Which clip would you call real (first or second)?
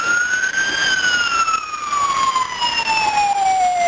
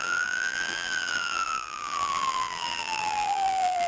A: first